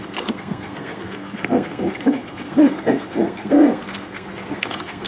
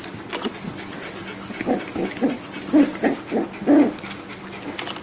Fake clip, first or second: first